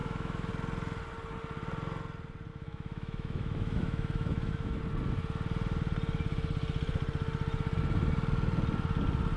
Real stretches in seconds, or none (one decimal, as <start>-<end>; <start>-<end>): 0.5-2.5; 4.8-9.4